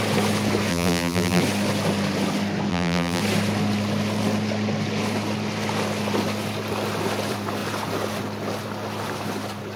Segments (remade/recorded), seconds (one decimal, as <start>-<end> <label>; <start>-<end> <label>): 0.0-0.7 recorded; 0.7-1.4 remade; 1.4-2.7 recorded; 2.7-3.2 remade; 3.2-9.8 recorded